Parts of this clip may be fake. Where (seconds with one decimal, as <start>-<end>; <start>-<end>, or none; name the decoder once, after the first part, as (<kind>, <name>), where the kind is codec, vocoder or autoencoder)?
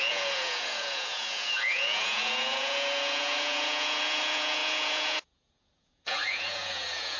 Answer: 0.0-7.2 (vocoder, Vocos)